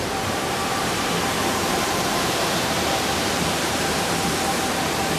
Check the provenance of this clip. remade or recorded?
remade